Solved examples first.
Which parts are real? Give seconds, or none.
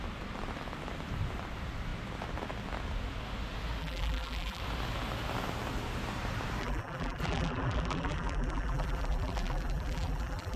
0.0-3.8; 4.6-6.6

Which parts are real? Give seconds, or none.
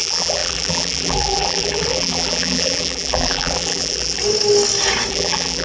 4.2-5.1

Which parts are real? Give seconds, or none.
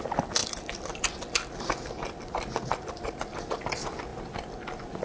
0.0-5.0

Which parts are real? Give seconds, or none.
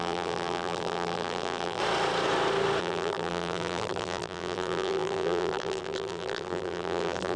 1.8-2.8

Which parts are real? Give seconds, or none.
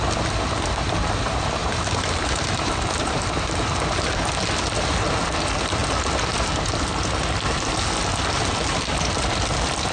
0.0-1.6; 4.2-9.9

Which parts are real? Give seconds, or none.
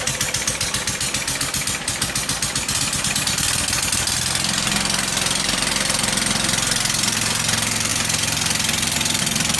0.0-7.9; 9.2-9.6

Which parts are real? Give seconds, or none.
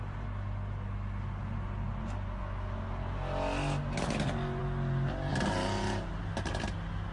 0.0-7.1